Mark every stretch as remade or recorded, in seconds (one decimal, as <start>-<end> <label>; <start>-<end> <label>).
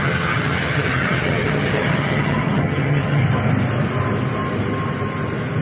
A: 0.0-3.2 remade; 3.2-5.6 recorded